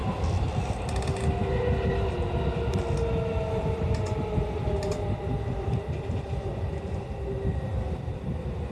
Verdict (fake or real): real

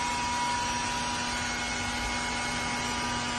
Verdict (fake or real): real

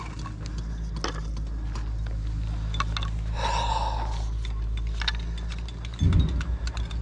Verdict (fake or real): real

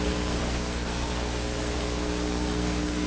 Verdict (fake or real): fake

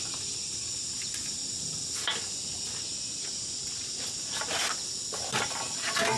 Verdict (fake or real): real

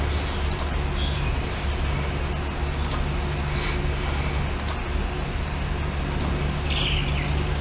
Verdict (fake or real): real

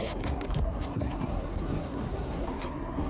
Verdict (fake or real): fake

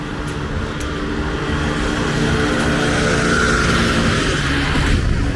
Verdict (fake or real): real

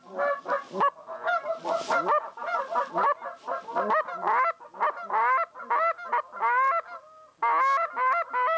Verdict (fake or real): real